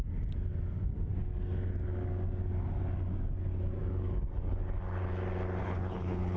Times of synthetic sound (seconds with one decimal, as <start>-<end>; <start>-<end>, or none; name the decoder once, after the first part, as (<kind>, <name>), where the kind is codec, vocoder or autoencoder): 5.6-6.4 (codec, HILCodec)